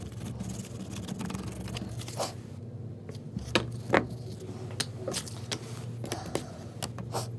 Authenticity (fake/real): real